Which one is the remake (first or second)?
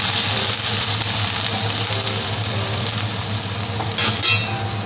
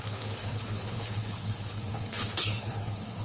second